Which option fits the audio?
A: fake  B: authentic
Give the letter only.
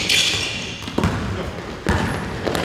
B